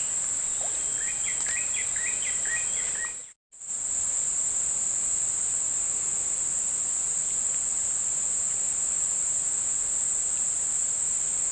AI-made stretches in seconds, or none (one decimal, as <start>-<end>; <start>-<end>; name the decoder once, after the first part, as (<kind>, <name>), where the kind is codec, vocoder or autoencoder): none